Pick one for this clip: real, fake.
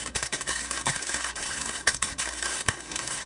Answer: fake